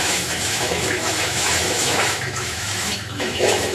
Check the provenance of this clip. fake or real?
fake